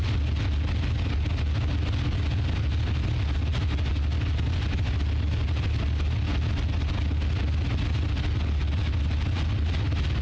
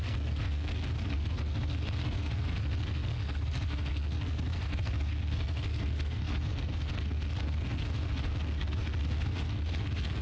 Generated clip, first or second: second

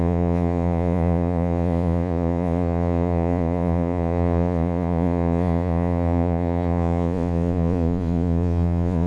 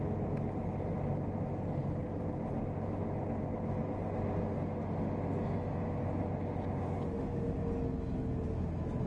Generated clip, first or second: first